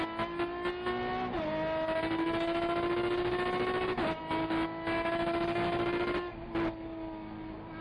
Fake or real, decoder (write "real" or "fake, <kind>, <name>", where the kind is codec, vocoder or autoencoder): real